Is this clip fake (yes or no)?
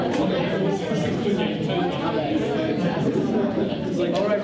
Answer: no